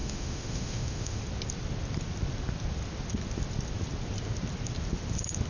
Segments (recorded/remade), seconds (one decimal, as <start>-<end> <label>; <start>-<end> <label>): 0.0-1.2 remade; 1.2-5.5 recorded